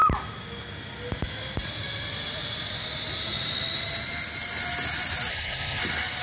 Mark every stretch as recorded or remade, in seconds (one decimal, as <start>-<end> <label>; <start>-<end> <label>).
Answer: 0.0-5.3 recorded; 5.3-5.8 remade; 5.8-6.2 recorded